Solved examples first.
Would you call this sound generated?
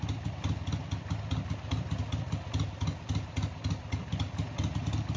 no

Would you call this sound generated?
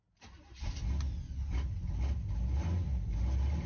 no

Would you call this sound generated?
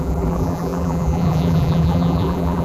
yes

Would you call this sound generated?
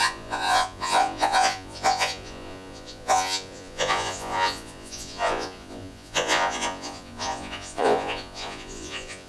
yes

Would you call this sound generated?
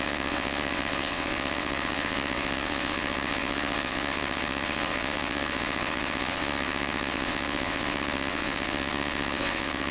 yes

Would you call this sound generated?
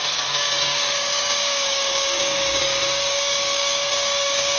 yes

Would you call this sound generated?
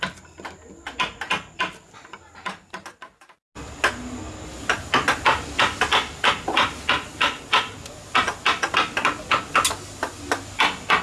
no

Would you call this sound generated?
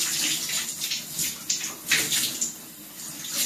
no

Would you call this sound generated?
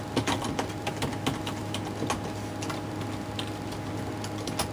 no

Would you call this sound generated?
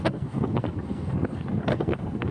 yes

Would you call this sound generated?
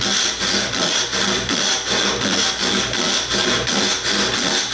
no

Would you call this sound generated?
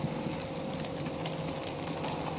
no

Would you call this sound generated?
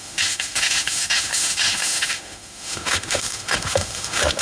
yes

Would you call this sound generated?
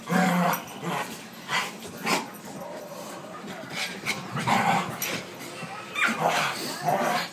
no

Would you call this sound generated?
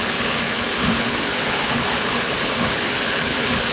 yes